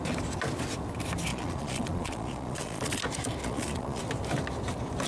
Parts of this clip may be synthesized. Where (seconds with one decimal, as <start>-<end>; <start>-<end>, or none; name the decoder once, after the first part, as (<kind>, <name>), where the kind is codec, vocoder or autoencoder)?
1.3-3.0 (vocoder, Vocos); 3.4-4.0